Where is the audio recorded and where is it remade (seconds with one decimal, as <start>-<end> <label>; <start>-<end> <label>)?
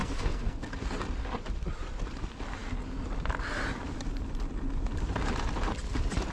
0.0-0.7 remade; 0.7-6.3 recorded